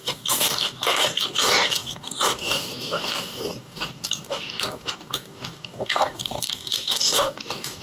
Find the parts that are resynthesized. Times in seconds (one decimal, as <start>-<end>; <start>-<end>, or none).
0.0-7.8